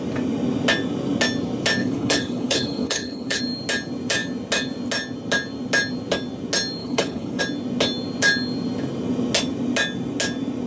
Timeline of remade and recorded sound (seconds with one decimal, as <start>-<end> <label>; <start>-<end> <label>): 0.0-1.8 recorded; 1.8-3.4 remade; 3.4-6.8 recorded; 6.8-7.4 remade; 7.4-10.7 recorded